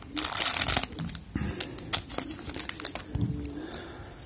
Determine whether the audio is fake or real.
real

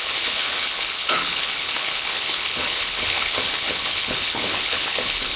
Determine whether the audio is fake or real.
fake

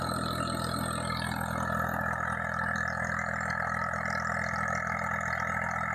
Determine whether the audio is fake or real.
real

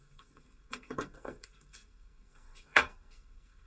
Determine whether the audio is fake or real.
fake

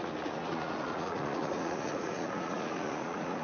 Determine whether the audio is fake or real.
fake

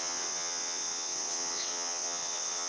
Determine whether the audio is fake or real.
fake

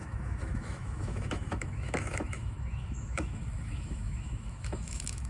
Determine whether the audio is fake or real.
fake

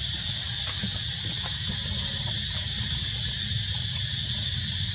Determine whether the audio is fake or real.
real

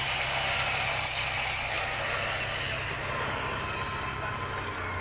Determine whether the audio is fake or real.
real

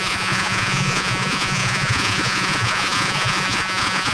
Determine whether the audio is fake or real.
fake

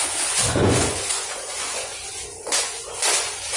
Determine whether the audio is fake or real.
fake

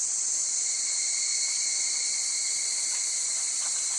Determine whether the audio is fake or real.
fake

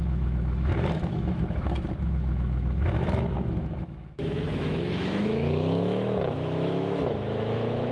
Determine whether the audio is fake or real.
fake